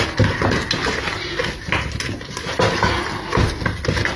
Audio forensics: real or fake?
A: real